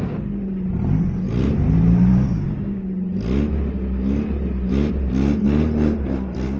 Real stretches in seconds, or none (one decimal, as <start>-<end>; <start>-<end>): 0.0-2.1; 2.8-6.6